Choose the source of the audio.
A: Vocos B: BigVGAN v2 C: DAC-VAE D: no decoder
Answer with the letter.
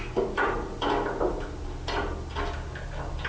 D